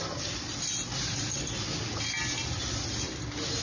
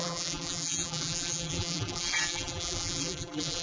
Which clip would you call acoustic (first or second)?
first